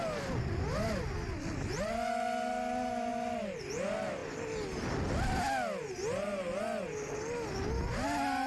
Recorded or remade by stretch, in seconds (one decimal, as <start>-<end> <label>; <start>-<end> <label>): 0.0-8.5 recorded